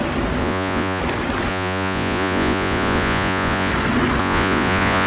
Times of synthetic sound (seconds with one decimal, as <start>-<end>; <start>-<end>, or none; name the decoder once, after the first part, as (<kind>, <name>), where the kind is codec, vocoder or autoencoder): 0.4-1.0 (vocoder, Vocos); 1.5-3.7; 4.2-5.1